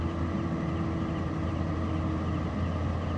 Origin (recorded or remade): recorded